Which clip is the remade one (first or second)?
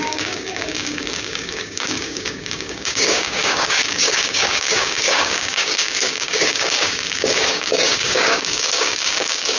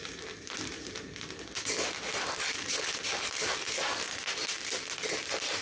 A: first